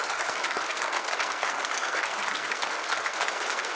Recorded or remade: remade